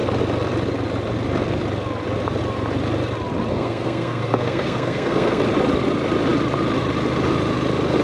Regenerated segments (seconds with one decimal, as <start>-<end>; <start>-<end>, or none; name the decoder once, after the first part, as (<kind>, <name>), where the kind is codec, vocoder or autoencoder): 3.5-5.4 (codec, SNAC)